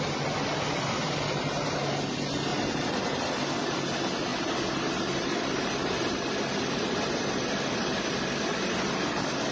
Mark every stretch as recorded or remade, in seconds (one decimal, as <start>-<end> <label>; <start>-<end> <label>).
0.0-2.5 recorded; 2.5-3.3 remade; 3.3-4.3 recorded; 4.3-6.1 remade; 6.1-9.5 recorded